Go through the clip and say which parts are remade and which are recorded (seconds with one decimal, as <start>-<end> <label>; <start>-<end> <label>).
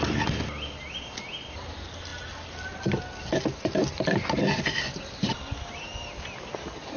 0.0-7.0 recorded